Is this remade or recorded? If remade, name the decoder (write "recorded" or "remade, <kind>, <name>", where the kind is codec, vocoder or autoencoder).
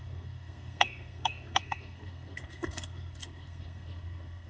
remade, codec, SNAC